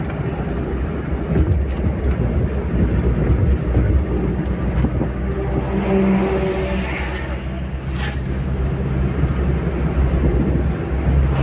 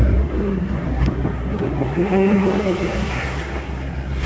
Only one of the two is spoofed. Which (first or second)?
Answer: second